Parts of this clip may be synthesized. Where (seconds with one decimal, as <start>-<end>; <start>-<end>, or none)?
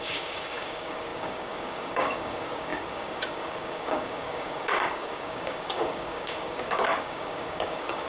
0.0-8.1